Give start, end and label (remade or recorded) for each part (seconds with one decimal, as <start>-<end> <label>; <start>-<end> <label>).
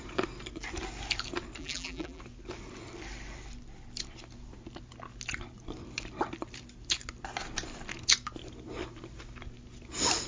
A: 0.0-1.6 recorded; 1.6-2.2 remade; 2.2-10.3 recorded